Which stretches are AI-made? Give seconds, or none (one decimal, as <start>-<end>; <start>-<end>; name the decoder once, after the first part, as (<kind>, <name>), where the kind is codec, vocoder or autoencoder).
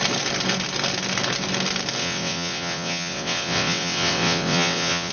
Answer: 2.0-5.1 (vocoder, WaveNeXt)